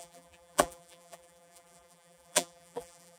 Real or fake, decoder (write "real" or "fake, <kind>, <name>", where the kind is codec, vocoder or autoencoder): fake, vocoder, BigVGAN v2